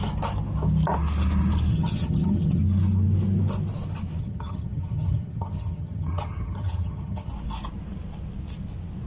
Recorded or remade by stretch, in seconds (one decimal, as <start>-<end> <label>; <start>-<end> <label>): 0.0-1.7 recorded; 1.7-2.6 remade; 2.6-4.2 recorded; 4.2-7.3 remade; 7.3-9.1 recorded